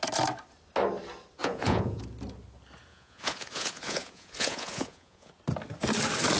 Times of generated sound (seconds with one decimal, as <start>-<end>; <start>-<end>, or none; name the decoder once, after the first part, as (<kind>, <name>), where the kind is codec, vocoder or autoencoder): 1.4-2.0 (vocoder, Vocos); 2.9-5.3